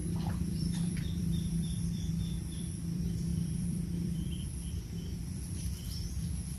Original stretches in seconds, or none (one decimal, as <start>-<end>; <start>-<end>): none